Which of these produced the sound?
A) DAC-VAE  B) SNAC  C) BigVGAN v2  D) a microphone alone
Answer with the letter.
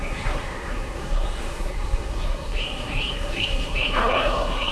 B